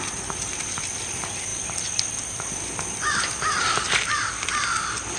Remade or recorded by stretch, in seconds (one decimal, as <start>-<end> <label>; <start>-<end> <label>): 0.0-5.2 recorded